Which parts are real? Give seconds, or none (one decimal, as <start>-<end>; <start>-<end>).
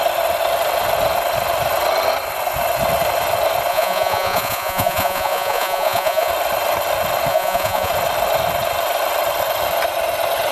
0.0-3.7; 6.3-7.3; 7.9-10.5